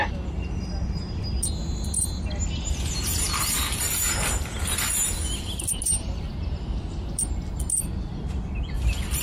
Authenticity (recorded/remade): recorded